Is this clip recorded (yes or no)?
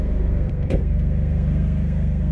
no